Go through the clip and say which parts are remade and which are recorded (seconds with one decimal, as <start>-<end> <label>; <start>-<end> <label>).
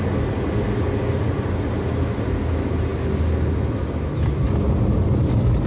0.0-5.7 recorded